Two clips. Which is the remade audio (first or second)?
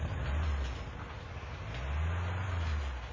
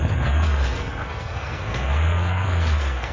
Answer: second